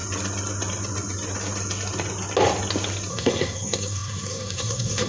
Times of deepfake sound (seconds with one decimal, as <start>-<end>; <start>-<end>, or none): 3.1-5.1